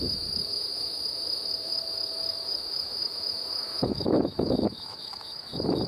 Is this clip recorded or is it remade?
remade